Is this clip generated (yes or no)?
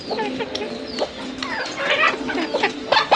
no